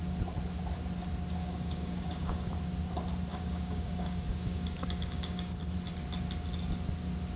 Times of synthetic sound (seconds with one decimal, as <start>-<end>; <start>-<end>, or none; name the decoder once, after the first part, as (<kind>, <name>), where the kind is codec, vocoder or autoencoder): 1.4-2.5 (codec, DAC); 3.3-5.6